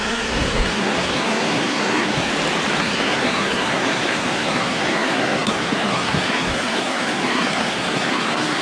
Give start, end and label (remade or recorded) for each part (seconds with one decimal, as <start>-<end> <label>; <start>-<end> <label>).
0.0-2.3 remade; 2.3-2.8 recorded; 2.8-8.6 remade